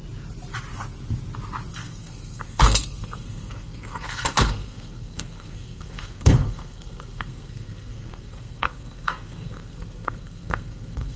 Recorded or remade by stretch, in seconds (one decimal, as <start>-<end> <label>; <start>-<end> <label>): 0.0-1.7 recorded; 1.7-11.2 remade